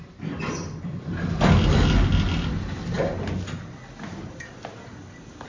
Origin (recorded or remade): recorded